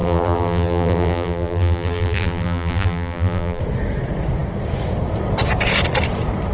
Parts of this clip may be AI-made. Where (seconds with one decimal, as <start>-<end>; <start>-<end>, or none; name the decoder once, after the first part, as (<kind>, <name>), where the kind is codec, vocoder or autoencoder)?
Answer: 0.0-3.6 (vocoder, BigVGAN v2)